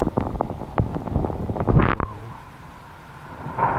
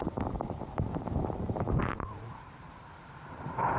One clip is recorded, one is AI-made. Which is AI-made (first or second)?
second